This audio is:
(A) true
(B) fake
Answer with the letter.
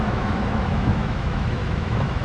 B